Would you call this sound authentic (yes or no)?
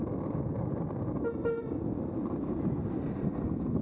yes